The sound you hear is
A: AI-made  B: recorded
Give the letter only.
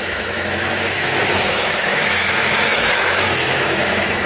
A